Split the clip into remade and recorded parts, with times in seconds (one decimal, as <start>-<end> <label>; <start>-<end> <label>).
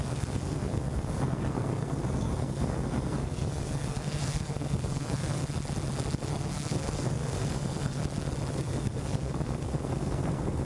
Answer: 0.0-5.4 remade; 5.4-6.2 recorded; 6.2-8.0 remade; 8.0-8.5 recorded; 8.5-10.6 remade